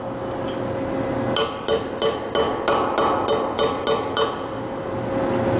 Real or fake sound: real